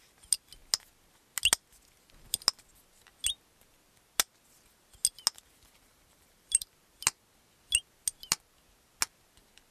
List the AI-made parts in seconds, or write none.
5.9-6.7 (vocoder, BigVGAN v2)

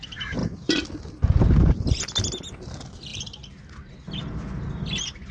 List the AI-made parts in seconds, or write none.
none

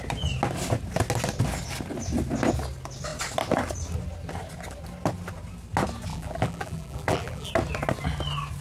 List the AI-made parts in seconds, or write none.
6.1-7.5 (vocoder, BigVGAN v2)

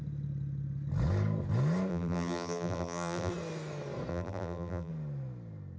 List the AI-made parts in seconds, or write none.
1.9-3.3 (vocoder, BigVGAN v2); 4.1-4.9

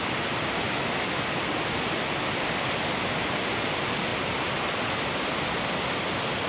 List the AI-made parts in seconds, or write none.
4.1-4.6 (vocoder, BigVGAN v2)

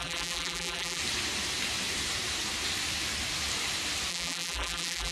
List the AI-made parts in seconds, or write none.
0.0-1.0 (vocoder, BigVGAN v2); 4.1-5.1

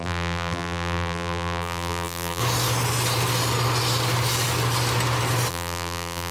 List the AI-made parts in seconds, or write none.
0.0-2.4 (vocoder, BigVGAN v2); 5.5-6.3

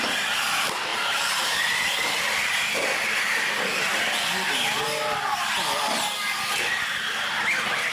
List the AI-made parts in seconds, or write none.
0.9-1.7 (vocoder, BigVGAN v2)